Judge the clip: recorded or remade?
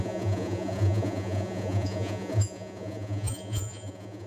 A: remade